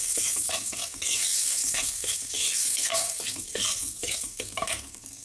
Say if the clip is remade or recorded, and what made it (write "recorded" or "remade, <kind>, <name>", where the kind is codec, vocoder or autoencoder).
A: remade, codec, SNAC